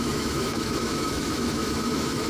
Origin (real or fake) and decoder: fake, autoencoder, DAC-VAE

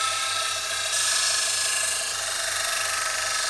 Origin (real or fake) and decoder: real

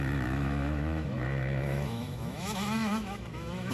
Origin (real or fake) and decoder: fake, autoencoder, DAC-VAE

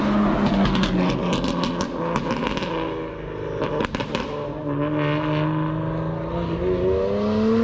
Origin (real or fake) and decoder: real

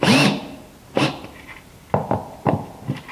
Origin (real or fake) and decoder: real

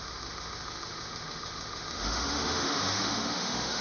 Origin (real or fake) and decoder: fake, autoencoder, DAC-VAE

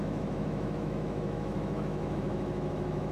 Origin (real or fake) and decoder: fake, autoencoder, DAC-VAE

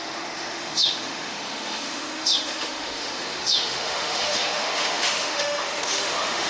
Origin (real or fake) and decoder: fake, autoencoder, DAC-VAE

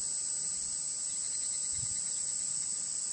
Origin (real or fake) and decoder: real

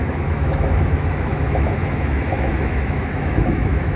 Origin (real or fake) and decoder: fake, autoencoder, DAC-VAE